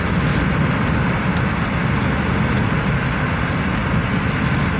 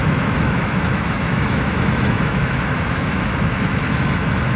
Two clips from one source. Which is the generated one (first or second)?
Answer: second